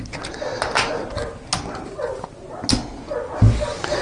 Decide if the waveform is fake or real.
real